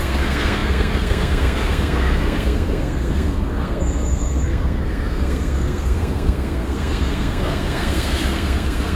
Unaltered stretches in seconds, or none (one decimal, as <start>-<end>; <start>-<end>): none